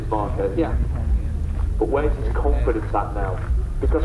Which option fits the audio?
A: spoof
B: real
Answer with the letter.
B